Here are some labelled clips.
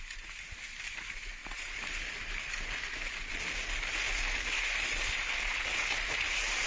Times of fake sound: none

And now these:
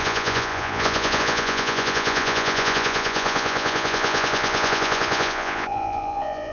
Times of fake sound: 0.0-6.5

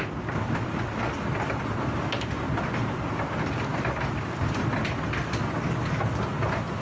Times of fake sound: none

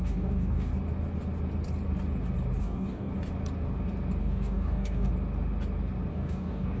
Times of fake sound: 0.0-0.7; 2.6-3.1; 4.2-5.1; 6.1-6.8

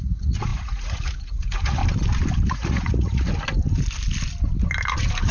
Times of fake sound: 0.0-1.8; 2.5-3.3